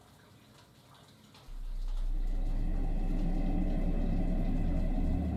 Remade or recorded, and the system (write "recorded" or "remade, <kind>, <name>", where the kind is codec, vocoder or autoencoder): recorded